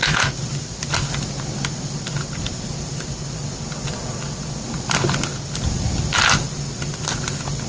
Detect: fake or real real